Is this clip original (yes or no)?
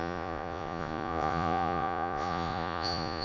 no